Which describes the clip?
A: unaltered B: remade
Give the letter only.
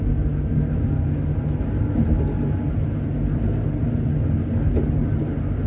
A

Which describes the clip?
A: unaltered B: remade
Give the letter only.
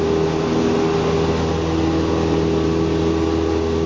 A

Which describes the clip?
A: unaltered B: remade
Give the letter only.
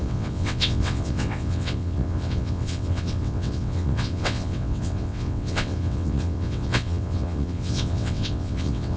B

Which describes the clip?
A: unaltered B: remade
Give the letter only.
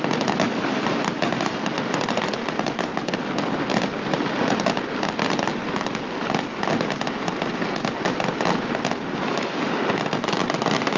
A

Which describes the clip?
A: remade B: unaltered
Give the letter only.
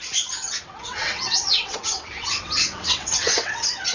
A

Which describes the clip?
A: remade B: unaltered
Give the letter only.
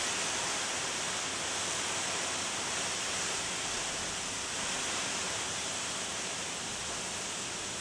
B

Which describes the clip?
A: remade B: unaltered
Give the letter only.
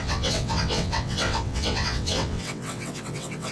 A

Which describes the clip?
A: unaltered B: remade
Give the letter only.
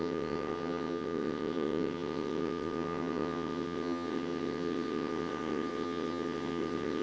B